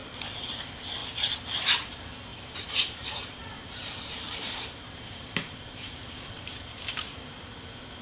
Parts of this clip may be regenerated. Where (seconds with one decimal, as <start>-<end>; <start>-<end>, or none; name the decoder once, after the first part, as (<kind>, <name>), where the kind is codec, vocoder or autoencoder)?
2.3-6.7 (vocoder, BigVGAN v2)